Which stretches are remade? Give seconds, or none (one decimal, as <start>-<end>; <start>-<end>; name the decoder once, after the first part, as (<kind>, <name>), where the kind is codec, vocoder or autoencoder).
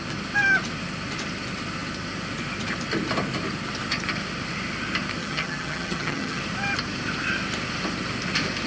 5.2-6.4 (vocoder, HiFi-GAN)